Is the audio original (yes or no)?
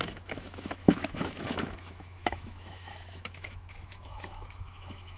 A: no